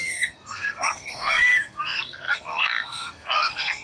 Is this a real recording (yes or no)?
no